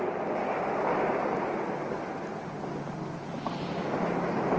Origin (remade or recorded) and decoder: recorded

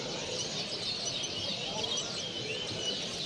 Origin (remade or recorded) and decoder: remade, vocoder, BigVGAN v2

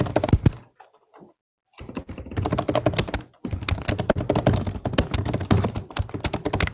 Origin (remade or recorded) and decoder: recorded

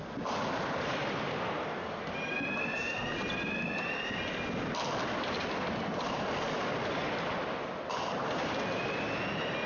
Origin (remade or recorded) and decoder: recorded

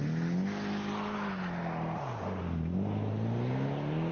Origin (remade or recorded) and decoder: recorded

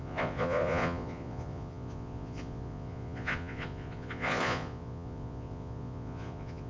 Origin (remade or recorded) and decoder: remade, vocoder, Vocos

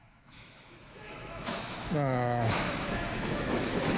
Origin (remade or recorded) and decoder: remade, autoencoder, DAC-VAE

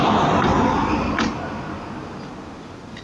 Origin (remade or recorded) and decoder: recorded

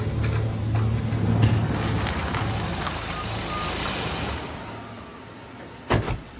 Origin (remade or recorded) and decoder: recorded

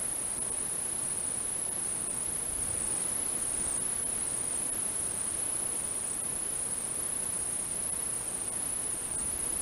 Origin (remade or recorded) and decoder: recorded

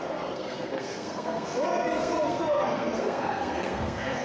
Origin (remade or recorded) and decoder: remade, codec, SNAC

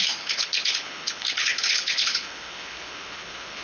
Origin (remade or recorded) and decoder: remade, codec, HILCodec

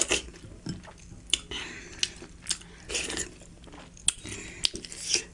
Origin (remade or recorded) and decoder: recorded